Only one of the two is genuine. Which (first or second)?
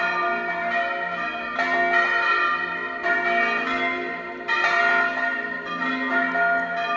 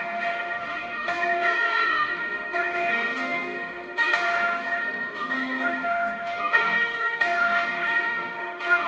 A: first